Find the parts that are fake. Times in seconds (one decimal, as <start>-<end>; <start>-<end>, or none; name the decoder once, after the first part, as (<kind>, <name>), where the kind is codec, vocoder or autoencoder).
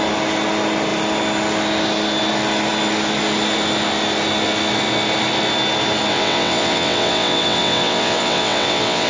6.1-9.1 (vocoder, WaveNeXt)